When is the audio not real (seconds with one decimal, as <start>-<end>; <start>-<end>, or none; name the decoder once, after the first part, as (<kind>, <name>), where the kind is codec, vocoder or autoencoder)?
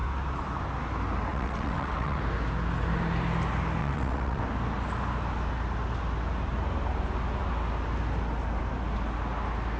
1.3-2.2 (vocoder, WaveNeXt); 3.8-4.4